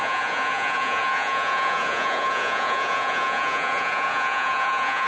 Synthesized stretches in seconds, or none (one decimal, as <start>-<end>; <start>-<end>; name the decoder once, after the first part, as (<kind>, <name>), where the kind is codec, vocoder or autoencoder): 0.0-5.1 (vocoder, Vocos)